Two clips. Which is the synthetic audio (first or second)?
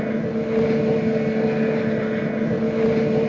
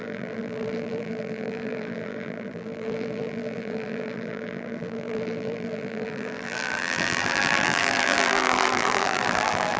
second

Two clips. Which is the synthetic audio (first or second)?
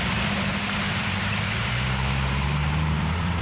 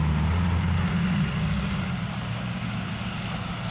first